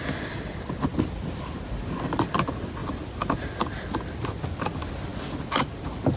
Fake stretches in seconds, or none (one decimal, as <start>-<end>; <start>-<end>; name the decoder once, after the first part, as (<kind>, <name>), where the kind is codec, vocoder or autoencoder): none